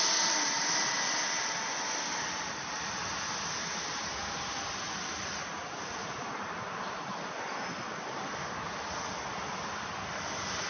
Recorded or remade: recorded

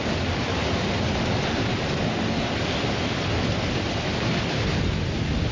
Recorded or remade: recorded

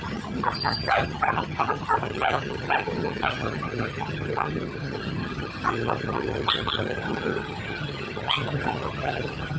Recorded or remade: remade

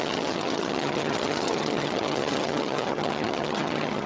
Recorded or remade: remade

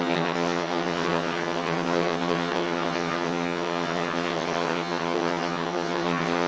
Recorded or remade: remade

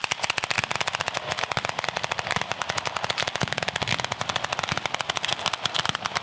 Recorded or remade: recorded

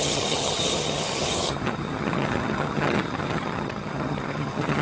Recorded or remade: remade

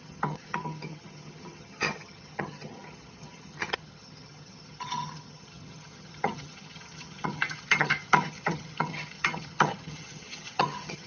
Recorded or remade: remade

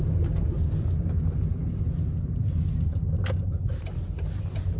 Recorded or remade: recorded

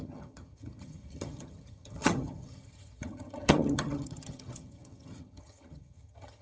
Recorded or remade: remade